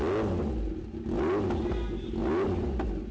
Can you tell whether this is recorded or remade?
recorded